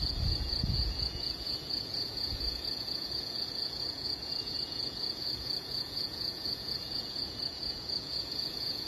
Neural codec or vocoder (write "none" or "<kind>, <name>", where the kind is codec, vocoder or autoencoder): vocoder, Vocos